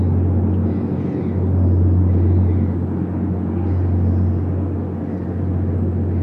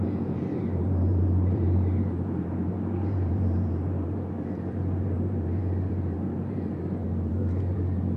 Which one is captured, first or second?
first